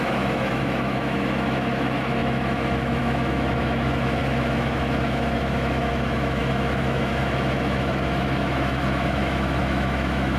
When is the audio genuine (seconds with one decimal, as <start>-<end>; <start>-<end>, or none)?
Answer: none